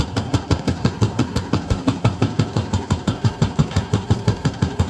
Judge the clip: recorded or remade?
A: remade